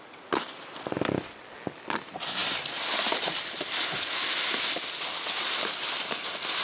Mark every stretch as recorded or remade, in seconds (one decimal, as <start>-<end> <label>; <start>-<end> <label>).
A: 0.0-6.6 recorded